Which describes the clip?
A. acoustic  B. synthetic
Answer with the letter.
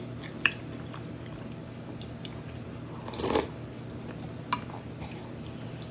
A